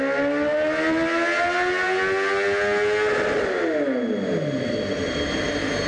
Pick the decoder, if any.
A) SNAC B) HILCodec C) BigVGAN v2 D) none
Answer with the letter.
D